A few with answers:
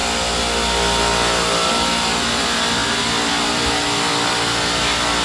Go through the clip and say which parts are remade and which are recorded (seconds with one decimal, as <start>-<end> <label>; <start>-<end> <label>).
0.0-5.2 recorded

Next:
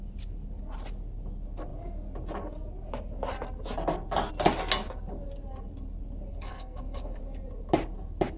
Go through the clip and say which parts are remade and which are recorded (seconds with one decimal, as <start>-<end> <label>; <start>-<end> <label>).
0.0-6.3 recorded; 6.3-7.2 remade; 7.2-8.4 recorded

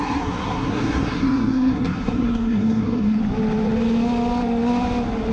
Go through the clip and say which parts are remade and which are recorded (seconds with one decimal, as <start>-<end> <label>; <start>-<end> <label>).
0.0-3.2 remade; 3.2-5.3 recorded

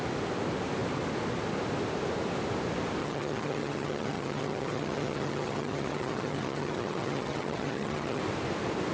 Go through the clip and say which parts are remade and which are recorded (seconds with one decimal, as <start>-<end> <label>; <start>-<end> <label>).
0.0-3.0 recorded; 3.0-8.2 remade; 8.2-8.9 recorded

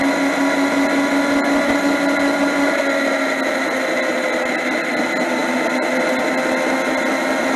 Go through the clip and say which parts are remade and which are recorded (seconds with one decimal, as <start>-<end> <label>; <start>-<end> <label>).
0.0-7.6 recorded

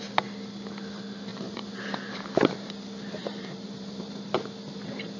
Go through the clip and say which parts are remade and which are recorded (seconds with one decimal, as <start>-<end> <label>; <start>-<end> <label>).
0.0-1.3 recorded; 1.3-2.7 remade; 2.7-3.2 recorded; 3.2-4.2 remade; 4.2-5.2 recorded

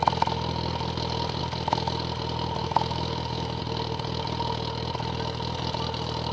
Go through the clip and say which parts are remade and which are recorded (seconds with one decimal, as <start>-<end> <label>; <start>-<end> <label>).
0.0-2.6 recorded; 2.6-3.6 remade; 3.6-6.3 recorded

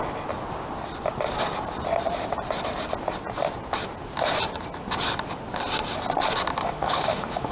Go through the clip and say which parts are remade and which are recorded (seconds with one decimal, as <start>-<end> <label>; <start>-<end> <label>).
0.0-6.6 recorded; 6.6-7.5 remade